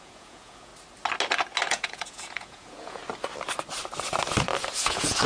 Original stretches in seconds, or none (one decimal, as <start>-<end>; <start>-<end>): 0.7-1.7; 3.0-4.8